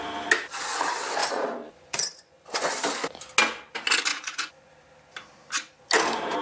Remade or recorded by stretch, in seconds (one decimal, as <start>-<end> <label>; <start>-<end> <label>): 0.0-1.2 recorded; 1.2-2.8 remade; 2.8-4.1 recorded; 4.1-4.7 remade; 4.7-6.4 recorded